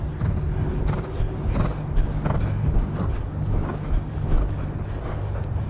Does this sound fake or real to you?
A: real